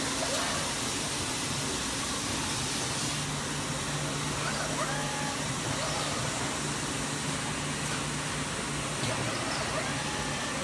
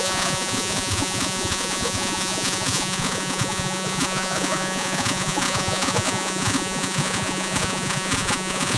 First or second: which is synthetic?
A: second